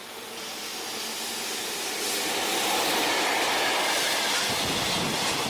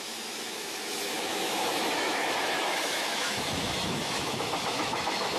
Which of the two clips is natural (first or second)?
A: first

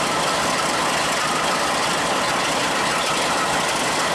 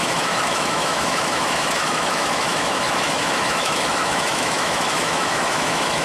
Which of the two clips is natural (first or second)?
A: first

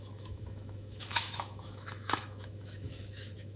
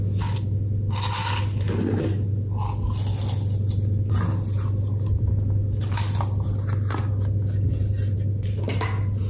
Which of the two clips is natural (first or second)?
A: second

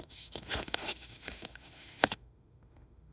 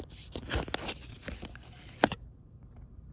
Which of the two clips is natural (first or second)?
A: second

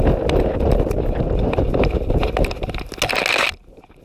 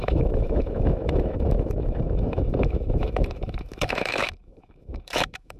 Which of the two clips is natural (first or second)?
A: first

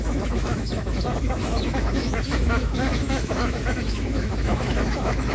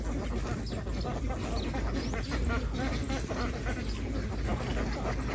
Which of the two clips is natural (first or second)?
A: second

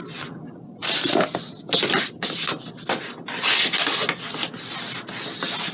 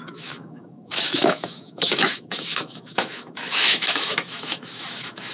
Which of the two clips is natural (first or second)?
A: first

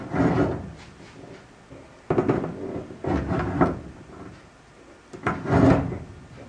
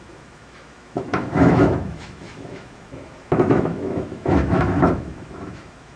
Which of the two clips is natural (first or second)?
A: first